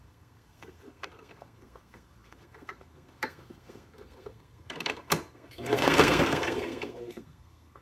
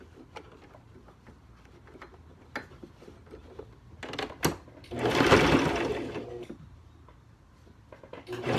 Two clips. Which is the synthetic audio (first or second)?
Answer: first